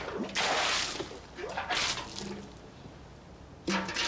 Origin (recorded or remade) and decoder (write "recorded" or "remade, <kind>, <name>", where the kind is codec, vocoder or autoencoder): recorded